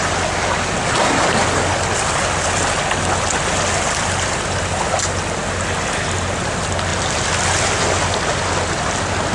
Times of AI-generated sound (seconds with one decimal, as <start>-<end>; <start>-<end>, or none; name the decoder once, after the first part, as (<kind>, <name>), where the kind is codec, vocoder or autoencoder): none